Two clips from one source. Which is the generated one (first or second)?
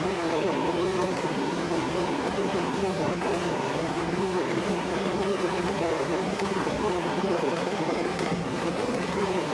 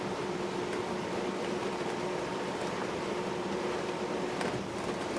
first